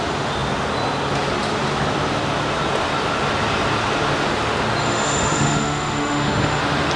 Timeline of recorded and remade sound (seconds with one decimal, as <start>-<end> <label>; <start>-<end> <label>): 0.0-4.8 recorded; 4.8-6.6 remade; 6.6-7.0 recorded